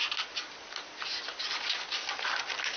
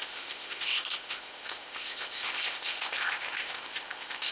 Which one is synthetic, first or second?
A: second